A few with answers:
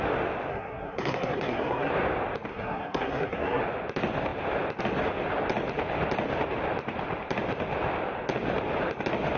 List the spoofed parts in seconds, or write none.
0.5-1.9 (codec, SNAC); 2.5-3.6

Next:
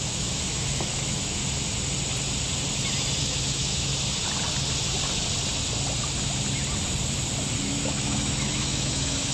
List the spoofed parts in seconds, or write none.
0.0-1.4 (autoencoder, DAC-VAE); 3.2-3.9; 7.6-9.3

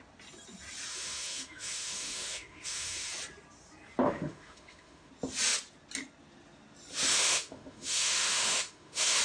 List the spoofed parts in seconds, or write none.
0.9-3.1 (autoencoder, DAC-VAE); 4.0-5.1; 7.1-9.2

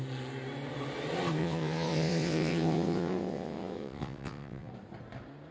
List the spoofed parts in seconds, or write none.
1.4-4.7 (vocoder, WaveNeXt)

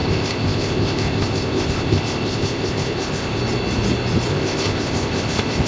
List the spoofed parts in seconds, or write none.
0.0-3.4 (codec, ZipCodec); 4.3-5.7

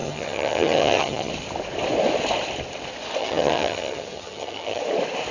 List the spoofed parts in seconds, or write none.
0.0-1.3 (vocoder, HiFi-GAN); 3.2-4.8

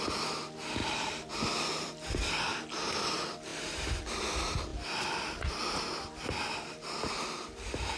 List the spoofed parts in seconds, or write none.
0.8-1.4 (vocoder, BigVGAN v2); 3.5-4.2; 4.7-5.6